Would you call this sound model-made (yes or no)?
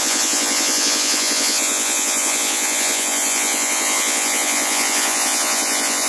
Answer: yes